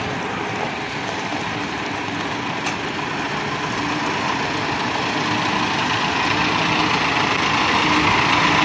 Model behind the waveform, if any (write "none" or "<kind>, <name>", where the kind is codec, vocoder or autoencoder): none